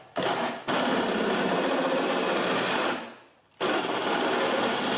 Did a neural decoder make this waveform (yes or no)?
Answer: no